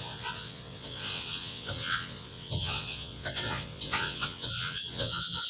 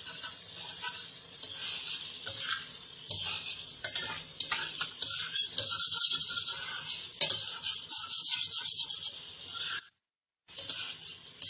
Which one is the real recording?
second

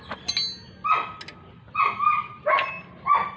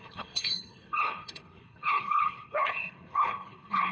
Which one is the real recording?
first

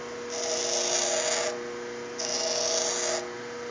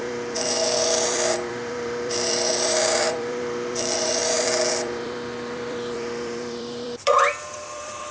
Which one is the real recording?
first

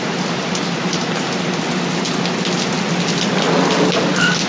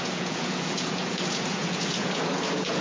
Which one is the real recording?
first